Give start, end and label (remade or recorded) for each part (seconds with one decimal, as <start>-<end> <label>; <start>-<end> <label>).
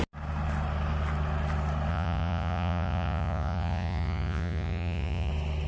0.0-1.9 recorded; 1.9-5.3 remade; 5.3-5.7 recorded